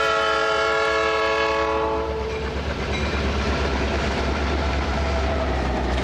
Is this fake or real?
fake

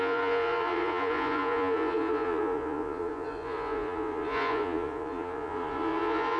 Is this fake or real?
fake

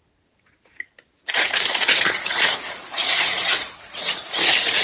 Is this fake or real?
fake